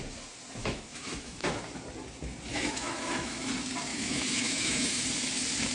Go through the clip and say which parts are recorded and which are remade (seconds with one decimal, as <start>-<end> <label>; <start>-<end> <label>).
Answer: 0.0-0.6 recorded; 0.6-1.6 remade; 1.6-2.5 recorded; 2.5-3.5 remade; 3.5-3.9 recorded; 3.9-5.0 remade; 5.0-5.7 recorded

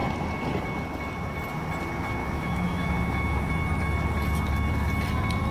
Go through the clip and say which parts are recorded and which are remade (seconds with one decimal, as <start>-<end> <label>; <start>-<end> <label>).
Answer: 0.0-2.2 recorded; 2.2-3.5 remade; 3.5-5.5 recorded

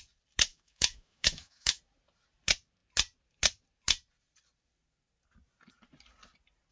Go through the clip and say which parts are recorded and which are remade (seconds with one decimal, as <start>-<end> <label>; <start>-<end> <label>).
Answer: 0.0-0.5 recorded; 0.5-1.8 remade; 1.8-6.7 recorded

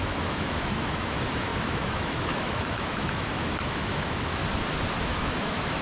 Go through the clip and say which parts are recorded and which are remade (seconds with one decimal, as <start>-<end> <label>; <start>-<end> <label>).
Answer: 0.0-4.4 remade; 4.4-5.1 recorded; 5.1-5.8 remade

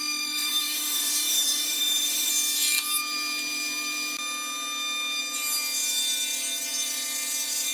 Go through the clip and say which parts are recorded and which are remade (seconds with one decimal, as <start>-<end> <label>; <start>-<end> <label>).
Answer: 0.0-2.3 remade; 2.3-7.7 recorded